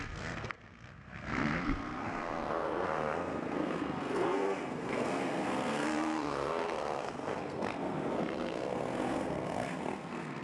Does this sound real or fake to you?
fake